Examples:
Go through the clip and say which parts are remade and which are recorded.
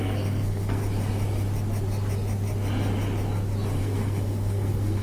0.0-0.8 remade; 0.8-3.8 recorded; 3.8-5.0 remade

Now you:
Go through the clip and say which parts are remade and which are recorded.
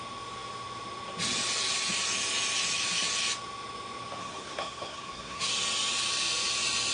0.0-4.2 recorded; 4.2-5.5 remade; 5.5-6.9 recorded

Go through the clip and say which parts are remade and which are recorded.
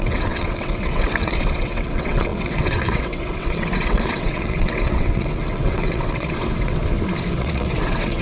0.0-6.8 remade; 6.8-7.4 recorded; 7.4-8.2 remade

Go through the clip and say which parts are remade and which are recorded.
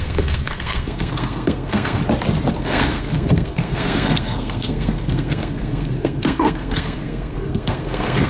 0.0-2.0 remade; 2.0-2.6 recorded; 2.6-8.3 remade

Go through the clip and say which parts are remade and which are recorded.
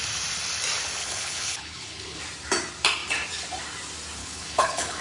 0.0-1.0 recorded; 1.0-2.2 remade; 2.2-4.2 recorded; 4.2-5.0 remade